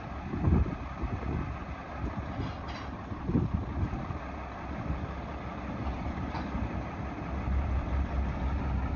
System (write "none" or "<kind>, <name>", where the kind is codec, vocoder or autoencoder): none